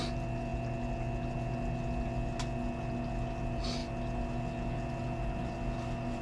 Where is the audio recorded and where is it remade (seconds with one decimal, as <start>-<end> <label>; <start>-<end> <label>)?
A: 0.0-6.2 recorded